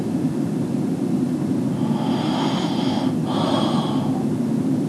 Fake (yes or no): yes